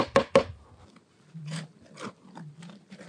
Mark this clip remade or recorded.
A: recorded